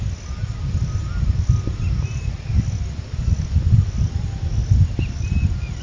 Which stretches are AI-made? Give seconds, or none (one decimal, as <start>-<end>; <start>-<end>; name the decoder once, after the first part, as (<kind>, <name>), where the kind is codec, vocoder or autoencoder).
none